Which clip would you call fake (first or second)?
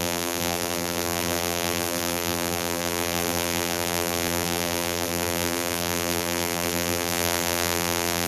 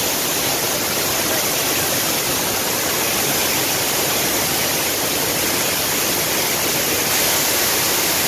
first